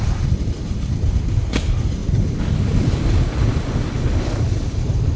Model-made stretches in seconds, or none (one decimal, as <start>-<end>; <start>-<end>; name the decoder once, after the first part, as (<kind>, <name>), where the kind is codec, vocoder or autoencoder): none